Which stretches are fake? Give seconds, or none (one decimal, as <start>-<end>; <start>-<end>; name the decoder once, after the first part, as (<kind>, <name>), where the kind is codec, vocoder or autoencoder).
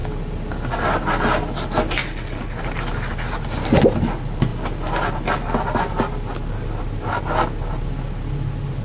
none